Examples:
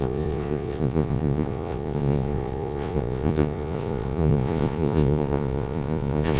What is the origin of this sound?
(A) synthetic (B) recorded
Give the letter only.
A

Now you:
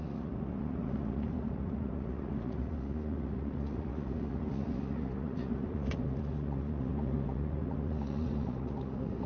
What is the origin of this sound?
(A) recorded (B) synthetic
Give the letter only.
B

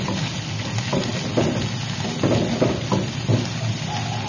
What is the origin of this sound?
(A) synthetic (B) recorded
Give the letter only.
B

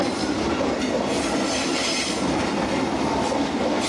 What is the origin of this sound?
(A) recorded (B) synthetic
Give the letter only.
A